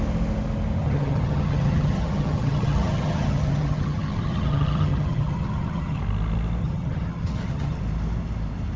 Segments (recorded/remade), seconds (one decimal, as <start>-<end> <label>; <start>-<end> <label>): 0.0-0.8 recorded; 0.8-6.0 remade; 6.0-6.6 recorded; 6.6-7.8 remade; 7.8-8.8 recorded

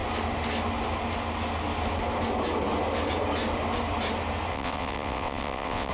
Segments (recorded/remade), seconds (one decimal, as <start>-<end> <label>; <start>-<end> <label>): 0.0-4.5 recorded; 4.5-5.9 remade

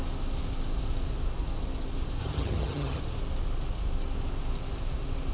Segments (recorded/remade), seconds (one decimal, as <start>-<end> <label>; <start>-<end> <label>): 0.0-2.2 recorded; 2.2-3.0 remade; 3.0-5.3 recorded